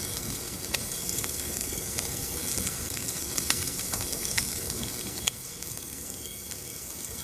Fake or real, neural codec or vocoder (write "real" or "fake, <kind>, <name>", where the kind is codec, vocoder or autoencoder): fake, codec, SNAC